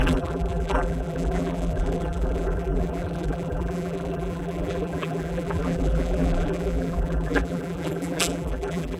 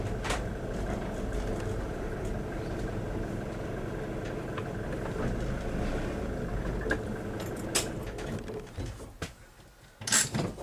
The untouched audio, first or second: second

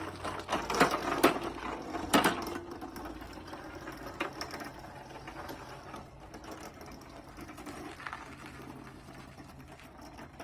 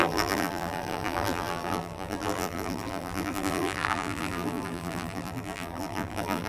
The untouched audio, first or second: first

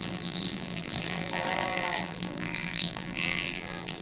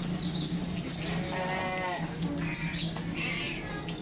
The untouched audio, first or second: second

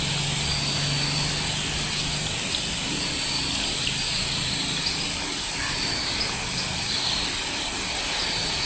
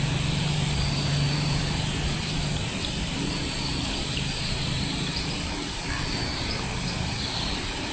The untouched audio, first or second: first